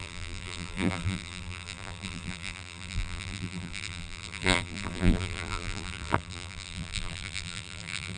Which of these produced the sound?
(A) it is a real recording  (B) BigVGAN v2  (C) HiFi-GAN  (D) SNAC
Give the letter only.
B